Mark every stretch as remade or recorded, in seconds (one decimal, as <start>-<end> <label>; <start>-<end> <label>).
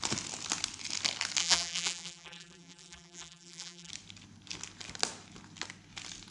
0.0-1.4 recorded; 1.4-3.9 remade; 3.9-6.3 recorded